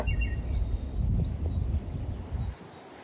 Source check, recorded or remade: recorded